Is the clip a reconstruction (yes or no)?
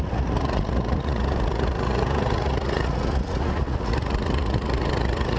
yes